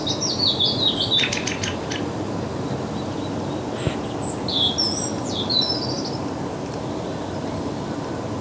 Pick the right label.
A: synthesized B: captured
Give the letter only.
B